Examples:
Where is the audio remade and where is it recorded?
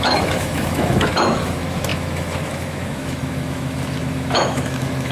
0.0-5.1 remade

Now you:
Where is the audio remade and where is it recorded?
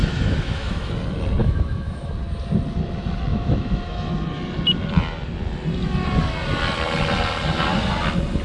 0.0-0.9 remade; 0.9-1.4 recorded; 1.4-2.1 remade; 2.1-3.3 recorded; 3.3-4.1 remade; 4.1-8.4 recorded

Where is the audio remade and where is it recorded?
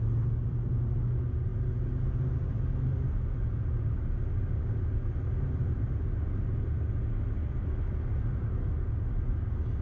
0.0-9.8 recorded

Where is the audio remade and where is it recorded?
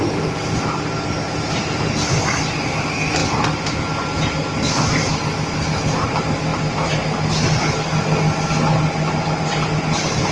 0.0-10.3 recorded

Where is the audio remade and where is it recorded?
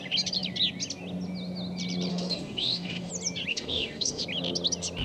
0.0-2.1 recorded; 2.1-3.1 remade; 3.1-3.5 recorded; 3.5-4.2 remade; 4.2-5.0 recorded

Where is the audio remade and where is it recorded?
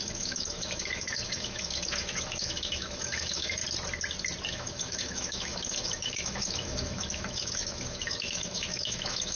0.0-3.6 remade; 3.6-4.5 recorded; 4.5-9.4 remade